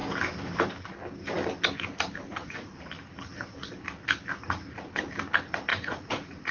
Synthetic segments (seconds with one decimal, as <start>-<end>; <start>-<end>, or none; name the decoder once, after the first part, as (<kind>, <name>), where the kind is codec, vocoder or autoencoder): 2.3-2.9 (vocoder, Vocos); 5.7-6.5